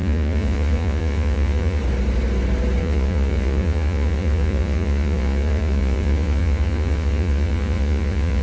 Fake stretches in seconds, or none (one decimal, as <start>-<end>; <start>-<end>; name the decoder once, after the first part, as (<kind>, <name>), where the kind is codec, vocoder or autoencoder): 0.0-1.8 (vocoder, Vocos); 2.8-8.4